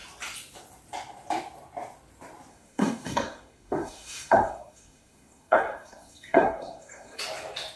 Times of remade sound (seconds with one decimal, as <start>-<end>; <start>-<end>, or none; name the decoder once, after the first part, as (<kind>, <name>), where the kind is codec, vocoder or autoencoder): 2.5-7.2 (codec, SNAC)